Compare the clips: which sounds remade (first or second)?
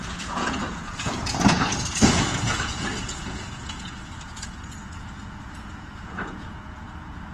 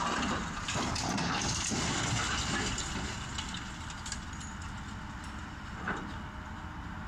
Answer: first